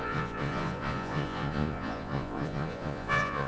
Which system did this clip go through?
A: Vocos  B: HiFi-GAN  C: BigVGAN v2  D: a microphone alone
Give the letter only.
A